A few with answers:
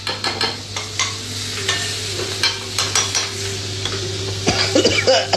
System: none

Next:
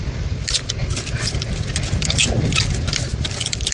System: none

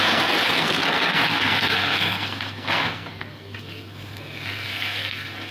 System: codec, SNAC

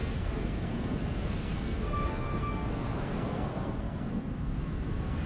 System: codec, SNAC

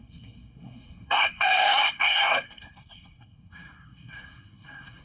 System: codec, SNAC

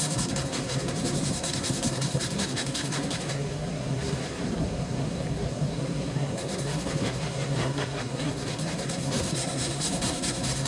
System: codec, SNAC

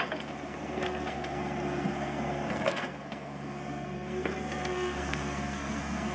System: codec, SNAC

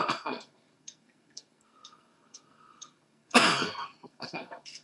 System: codec, SNAC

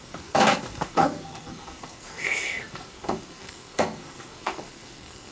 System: codec, SNAC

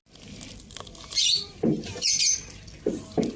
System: none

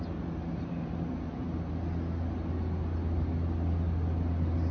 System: none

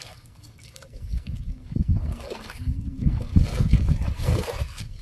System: codec, SNAC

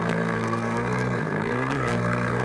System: codec, SNAC